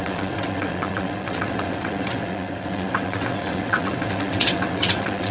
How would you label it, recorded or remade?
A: remade